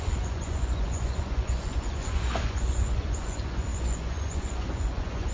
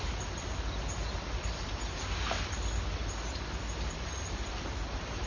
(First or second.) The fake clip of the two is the first